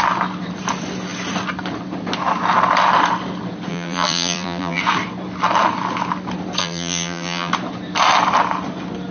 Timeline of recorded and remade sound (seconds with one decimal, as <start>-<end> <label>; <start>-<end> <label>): 0.0-3.7 recorded; 3.7-4.8 remade; 4.8-6.6 recorded; 6.6-7.5 remade; 7.5-9.1 recorded